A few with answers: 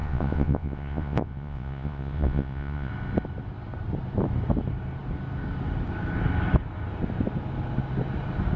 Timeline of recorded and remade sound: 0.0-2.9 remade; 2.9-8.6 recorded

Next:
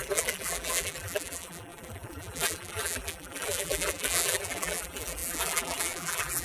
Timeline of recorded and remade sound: 0.0-6.4 remade